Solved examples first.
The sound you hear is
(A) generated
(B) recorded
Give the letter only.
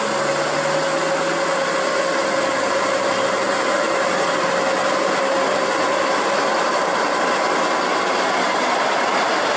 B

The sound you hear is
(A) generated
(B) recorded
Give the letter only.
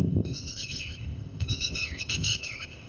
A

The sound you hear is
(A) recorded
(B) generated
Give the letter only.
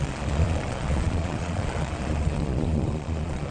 B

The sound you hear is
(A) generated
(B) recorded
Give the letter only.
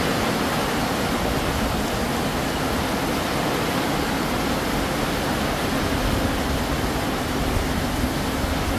B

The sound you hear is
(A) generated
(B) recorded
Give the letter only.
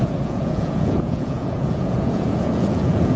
A